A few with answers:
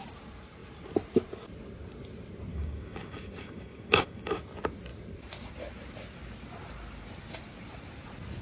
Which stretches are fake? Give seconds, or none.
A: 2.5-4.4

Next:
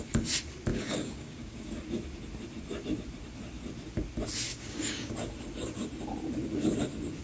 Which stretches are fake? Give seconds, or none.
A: 0.7-1.7; 4.5-5.1

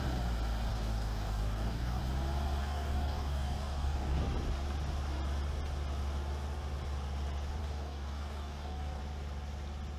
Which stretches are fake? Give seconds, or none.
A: 0.7-2.0; 2.6-4.2; 7.6-9.0

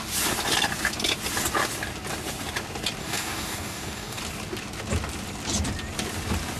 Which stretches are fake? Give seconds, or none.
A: 3.0-4.2